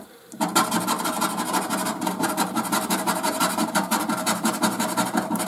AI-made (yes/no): yes